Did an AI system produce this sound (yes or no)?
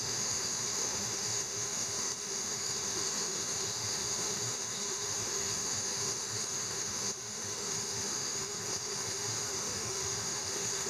yes